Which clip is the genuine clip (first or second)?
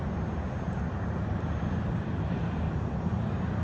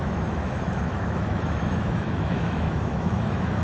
first